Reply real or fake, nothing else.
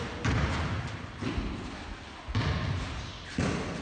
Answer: real